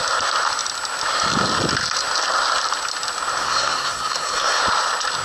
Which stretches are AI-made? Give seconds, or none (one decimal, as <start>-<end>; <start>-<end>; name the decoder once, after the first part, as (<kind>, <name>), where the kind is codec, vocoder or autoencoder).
3.4-4.6 (codec, SNAC)